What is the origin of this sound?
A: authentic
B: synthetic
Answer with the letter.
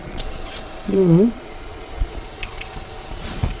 B